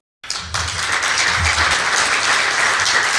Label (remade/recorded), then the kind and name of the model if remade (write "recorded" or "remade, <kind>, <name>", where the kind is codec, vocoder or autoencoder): recorded